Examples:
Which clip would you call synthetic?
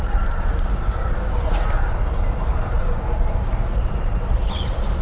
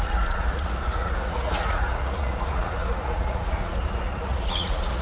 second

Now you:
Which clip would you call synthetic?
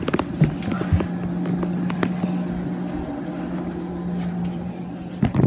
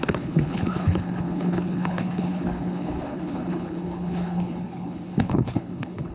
second